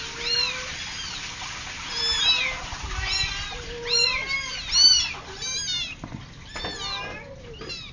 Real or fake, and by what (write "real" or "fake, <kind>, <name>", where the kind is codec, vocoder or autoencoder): real